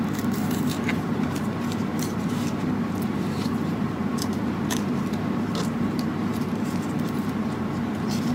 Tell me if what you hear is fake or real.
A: fake